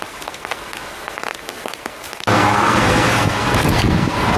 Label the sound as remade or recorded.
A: remade